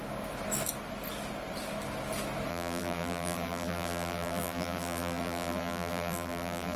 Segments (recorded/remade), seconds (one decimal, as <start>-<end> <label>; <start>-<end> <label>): 0.0-2.5 recorded; 2.5-6.8 remade